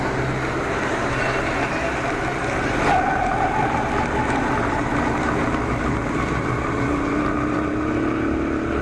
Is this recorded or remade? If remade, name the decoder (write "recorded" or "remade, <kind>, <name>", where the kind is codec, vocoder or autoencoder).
recorded